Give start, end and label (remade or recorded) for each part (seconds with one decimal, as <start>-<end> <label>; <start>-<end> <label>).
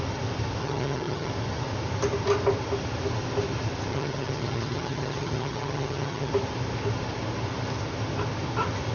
0.0-0.6 recorded; 0.6-1.3 remade; 1.3-3.9 recorded; 3.9-6.3 remade; 6.3-8.9 recorded